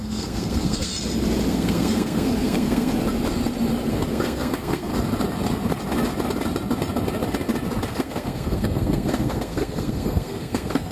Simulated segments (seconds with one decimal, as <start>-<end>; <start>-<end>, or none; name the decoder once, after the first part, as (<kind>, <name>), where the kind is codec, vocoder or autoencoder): 0.0-0.9 (codec, SNAC); 1.5-2.9; 3.9-4.9; 7.9-10.9